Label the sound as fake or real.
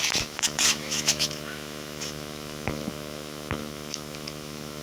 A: fake